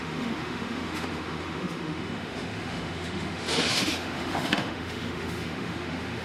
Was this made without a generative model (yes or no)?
no